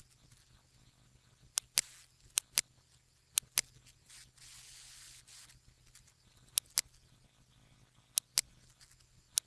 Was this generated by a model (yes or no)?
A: no